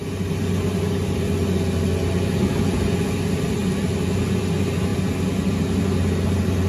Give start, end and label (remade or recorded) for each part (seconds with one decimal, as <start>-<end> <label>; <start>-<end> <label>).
0.0-6.7 recorded